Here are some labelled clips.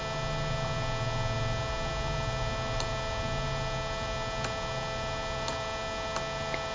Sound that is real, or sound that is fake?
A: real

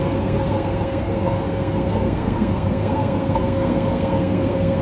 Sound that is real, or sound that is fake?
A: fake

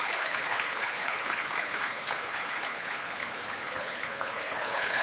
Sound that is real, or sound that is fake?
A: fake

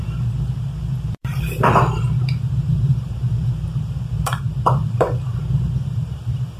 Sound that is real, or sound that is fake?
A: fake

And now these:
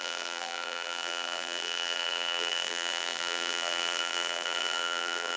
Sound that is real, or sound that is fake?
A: fake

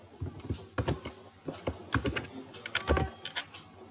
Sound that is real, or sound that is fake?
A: real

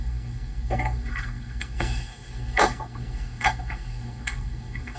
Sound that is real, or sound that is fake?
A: fake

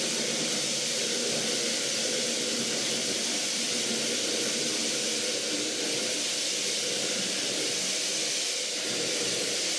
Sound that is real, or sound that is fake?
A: fake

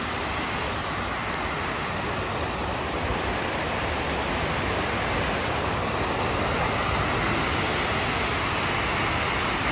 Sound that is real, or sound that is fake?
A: real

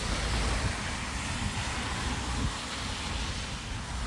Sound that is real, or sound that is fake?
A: real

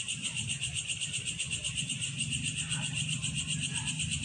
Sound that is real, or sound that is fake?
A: real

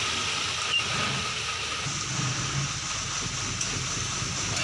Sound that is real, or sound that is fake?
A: real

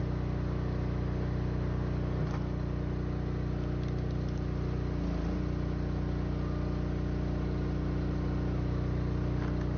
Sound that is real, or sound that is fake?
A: real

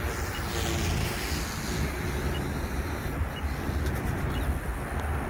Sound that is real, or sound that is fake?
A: real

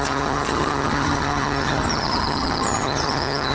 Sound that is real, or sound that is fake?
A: fake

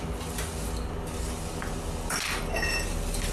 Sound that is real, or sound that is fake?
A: real